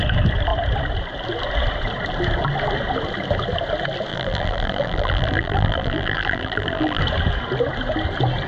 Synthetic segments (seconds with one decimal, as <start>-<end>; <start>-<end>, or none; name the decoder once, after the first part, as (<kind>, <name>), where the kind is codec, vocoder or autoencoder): 4.1-7.0 (vocoder, BigVGAN v2)

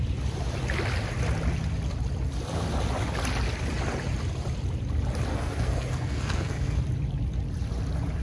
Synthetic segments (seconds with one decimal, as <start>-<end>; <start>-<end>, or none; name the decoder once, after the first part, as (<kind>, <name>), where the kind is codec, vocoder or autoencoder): 5.3-6.8 (codec, SNAC)

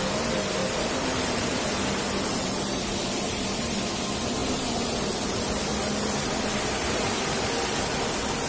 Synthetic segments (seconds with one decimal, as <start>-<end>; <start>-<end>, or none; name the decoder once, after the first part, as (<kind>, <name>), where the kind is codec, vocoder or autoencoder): 0.6-1.6 (vocoder, BigVGAN v2); 2.3-3.3

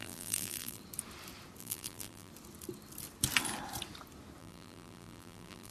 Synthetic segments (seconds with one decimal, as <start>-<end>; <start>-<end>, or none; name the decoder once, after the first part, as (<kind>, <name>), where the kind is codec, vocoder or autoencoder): 0.0-0.8 (vocoder, BigVGAN v2); 1.6-2.3; 4.4-5.7

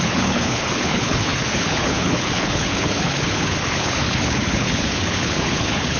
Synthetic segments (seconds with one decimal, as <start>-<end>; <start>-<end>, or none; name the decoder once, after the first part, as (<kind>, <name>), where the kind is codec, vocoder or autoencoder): 0.0-6.0 (codec, HILCodec)

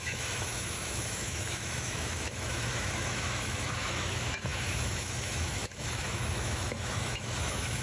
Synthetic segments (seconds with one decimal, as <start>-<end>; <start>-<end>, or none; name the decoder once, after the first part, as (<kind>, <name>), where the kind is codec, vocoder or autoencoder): 0.0-7.8 (autoencoder, DAC-VAE)

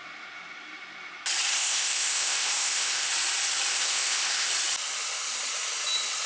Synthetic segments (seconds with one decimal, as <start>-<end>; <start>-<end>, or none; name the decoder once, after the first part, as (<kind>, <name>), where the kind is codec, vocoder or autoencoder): 1.5-3.1 (codec, ZipCodec); 3.7-4.5

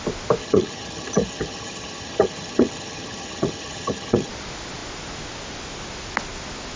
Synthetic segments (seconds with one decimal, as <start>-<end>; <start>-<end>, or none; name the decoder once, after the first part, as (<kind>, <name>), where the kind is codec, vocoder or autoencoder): 0.4-4.3 (vocoder, HiFi-GAN)